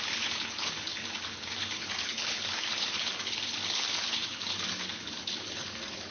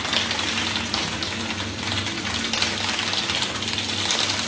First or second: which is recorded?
second